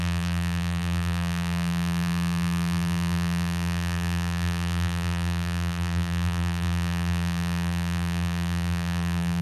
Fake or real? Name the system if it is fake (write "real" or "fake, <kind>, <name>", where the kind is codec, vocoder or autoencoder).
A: fake, vocoder, BigVGAN v2